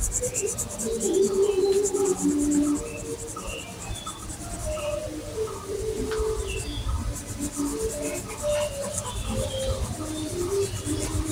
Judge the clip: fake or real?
real